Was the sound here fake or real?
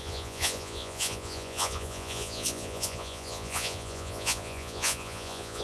fake